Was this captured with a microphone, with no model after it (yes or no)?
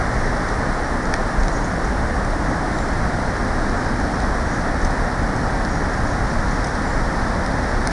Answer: yes